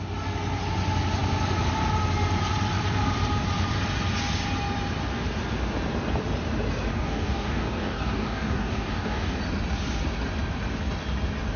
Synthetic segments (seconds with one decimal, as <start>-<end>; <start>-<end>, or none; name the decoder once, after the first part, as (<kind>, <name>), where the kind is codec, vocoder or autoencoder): 6.9-9.4 (codec, DAC)